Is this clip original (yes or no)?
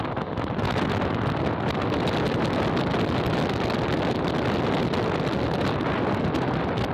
yes